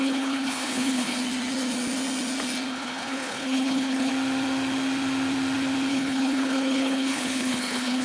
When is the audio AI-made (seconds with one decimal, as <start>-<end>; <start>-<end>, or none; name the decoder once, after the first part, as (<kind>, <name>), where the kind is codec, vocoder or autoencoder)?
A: 0.0-1.2 (codec, HILCodec); 2.7-4.1; 5.9-8.0

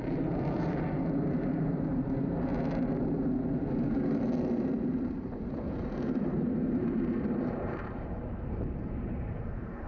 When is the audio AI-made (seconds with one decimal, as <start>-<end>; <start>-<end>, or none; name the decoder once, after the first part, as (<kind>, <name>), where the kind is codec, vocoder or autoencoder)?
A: 0.0-2.5 (vocoder, BigVGAN v2); 5.2-9.9